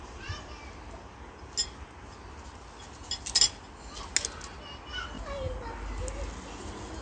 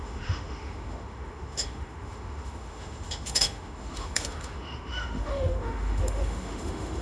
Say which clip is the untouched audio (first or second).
first